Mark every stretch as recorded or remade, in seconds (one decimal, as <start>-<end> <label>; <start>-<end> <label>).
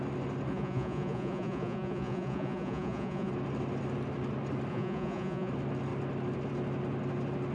0.0-0.5 recorded; 0.5-3.3 remade; 3.3-4.7 recorded; 4.7-5.5 remade; 5.5-7.5 recorded